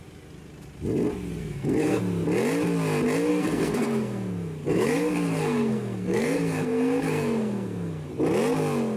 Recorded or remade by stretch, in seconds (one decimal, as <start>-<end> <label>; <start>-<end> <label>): 0.0-1.4 recorded; 1.4-2.0 remade; 2.0-3.3 recorded; 3.3-8.1 remade; 8.1-9.0 recorded